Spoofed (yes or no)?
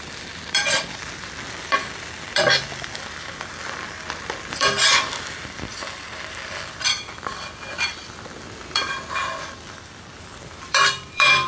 yes